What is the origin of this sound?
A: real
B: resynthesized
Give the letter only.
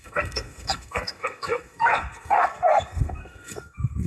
B